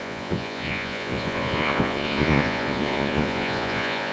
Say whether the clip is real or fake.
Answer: fake